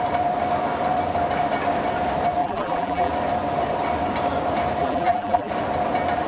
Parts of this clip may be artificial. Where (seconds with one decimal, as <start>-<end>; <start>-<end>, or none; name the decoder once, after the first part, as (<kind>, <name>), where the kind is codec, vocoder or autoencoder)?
2.4-3.1 (vocoder, BigVGAN v2); 4.8-5.5